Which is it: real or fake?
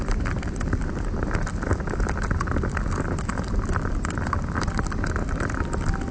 real